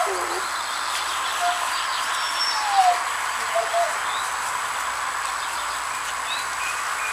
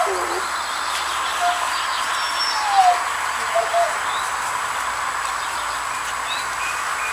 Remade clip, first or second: first